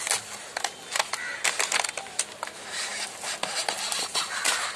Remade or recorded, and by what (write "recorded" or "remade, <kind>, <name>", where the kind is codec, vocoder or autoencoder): recorded